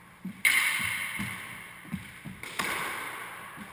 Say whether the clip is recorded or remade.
recorded